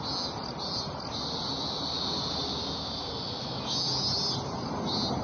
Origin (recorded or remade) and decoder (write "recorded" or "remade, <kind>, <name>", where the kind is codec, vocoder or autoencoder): recorded